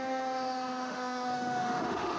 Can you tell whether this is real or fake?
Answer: fake